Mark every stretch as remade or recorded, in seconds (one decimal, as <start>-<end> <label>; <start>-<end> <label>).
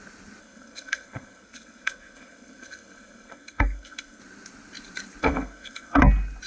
0.0-0.4 recorded; 0.4-4.2 remade; 4.2-5.2 recorded; 5.2-6.0 remade; 6.0-6.5 recorded